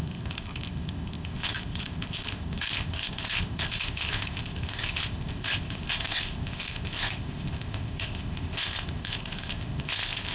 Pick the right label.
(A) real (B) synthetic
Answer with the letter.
B